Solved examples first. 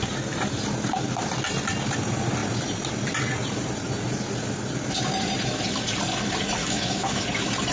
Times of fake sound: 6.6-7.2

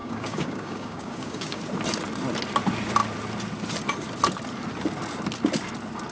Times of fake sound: 0.0-1.6